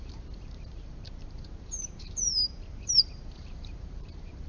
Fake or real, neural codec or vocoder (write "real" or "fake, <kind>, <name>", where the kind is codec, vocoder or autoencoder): fake, vocoder, BigVGAN v2